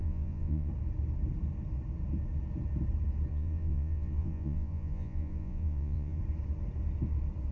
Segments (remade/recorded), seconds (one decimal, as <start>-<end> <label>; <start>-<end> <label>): 0.0-0.7 remade; 0.7-3.3 recorded; 3.3-6.2 remade; 6.2-7.5 recorded